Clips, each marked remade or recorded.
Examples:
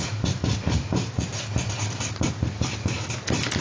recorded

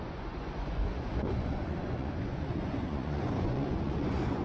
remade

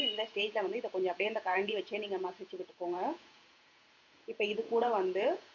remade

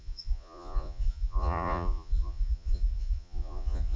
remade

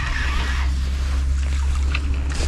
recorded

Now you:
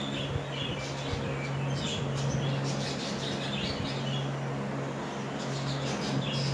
recorded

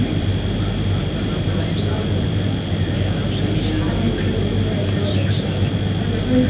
recorded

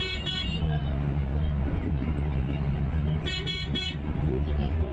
remade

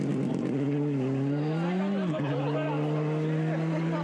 recorded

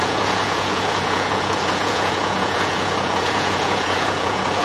remade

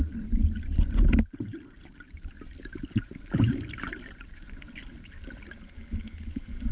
recorded